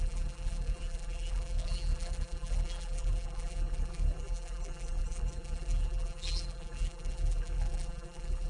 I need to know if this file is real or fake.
fake